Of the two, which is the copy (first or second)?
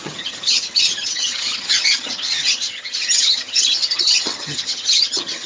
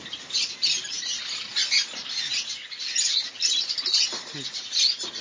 first